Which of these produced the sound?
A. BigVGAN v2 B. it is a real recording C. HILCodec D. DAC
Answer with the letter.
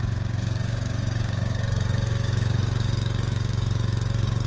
D